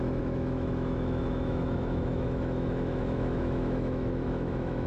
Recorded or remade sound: remade